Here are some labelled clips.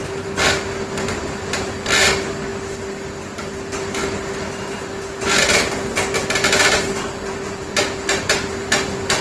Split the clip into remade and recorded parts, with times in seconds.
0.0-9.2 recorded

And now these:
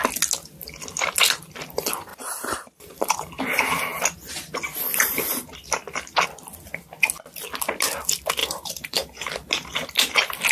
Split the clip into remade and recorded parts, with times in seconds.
0.0-2.1 recorded; 2.1-3.4 remade; 3.4-8.4 recorded; 8.4-9.5 remade; 9.5-10.5 recorded

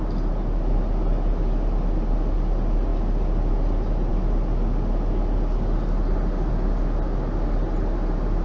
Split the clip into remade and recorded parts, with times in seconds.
0.0-8.4 recorded